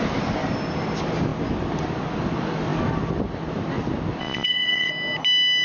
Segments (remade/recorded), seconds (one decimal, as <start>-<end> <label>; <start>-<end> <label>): 0.0-4.2 recorded; 4.2-4.9 remade; 4.9-5.6 recorded